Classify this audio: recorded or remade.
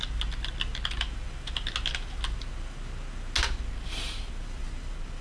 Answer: recorded